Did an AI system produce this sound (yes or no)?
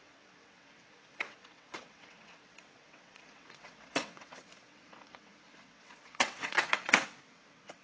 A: yes